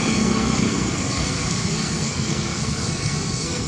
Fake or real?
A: fake